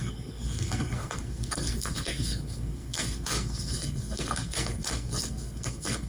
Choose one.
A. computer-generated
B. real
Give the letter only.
A